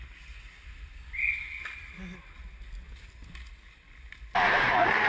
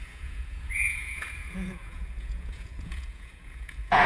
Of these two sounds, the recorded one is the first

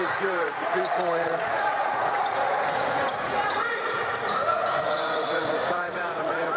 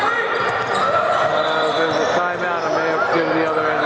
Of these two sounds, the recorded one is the second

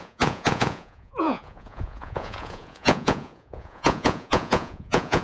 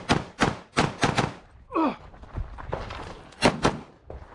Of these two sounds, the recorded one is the second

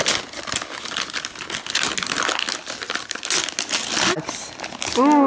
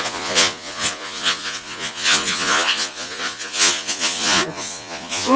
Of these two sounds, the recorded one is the first